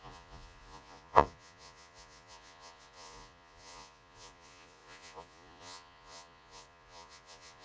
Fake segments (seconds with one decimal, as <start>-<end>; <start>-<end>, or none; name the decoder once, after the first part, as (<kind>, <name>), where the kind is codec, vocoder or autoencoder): 0.0-7.6 (vocoder, Vocos)